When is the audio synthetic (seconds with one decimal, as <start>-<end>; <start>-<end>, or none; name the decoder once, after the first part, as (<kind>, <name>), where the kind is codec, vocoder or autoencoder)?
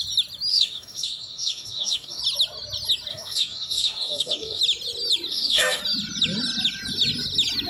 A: 0.5-2.2 (codec, DAC); 3.1-4.6; 5.3-5.8